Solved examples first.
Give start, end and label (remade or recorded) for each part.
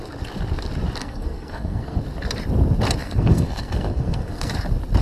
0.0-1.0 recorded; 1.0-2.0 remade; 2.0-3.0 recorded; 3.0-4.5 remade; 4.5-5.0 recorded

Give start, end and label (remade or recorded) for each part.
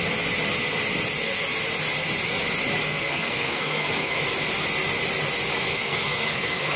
0.0-2.9 recorded; 2.9-4.2 remade; 4.2-5.7 recorded; 5.7-6.8 remade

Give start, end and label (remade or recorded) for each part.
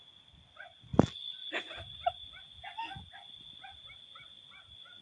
0.0-5.0 recorded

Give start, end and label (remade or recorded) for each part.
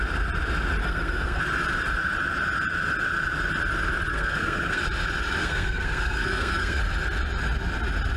0.0-0.8 recorded; 0.8-1.4 remade; 1.4-4.1 recorded; 4.1-4.8 remade; 4.8-5.4 recorded; 5.4-6.8 remade; 6.8-8.2 recorded